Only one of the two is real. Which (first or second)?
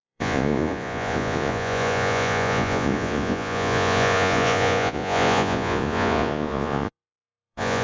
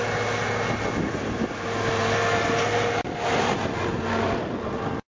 second